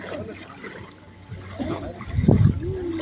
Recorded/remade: recorded